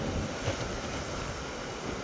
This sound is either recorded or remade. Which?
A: recorded